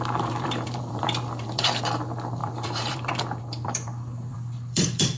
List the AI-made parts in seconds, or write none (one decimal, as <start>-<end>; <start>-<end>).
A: 0.0-5.2